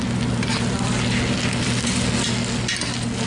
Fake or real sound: real